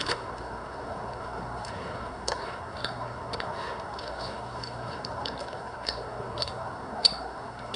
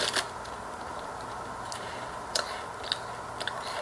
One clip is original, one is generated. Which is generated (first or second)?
first